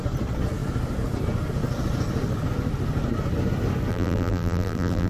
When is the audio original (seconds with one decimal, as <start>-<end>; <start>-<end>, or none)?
0.0-3.9